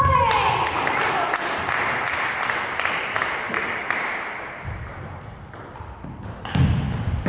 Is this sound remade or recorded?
recorded